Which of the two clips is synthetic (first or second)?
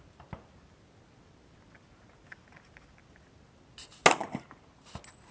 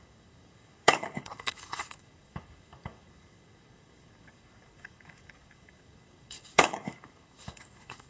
second